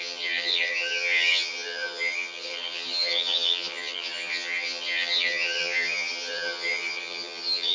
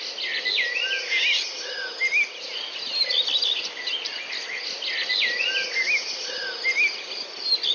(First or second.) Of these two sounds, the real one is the second